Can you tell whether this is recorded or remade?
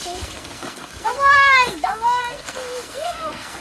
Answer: remade